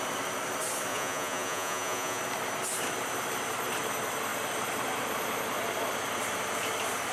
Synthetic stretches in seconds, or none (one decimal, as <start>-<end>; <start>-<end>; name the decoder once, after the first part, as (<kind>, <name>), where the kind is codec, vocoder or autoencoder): 0.9-2.2 (vocoder, Vocos)